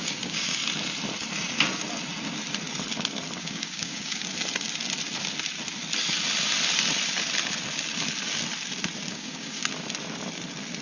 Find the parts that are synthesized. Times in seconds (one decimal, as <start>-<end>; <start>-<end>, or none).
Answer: 0.0-0.6; 3.4-4.2; 9.1-9.6